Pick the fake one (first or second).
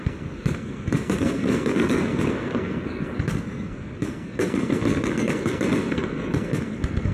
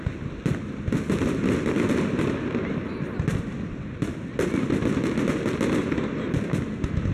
first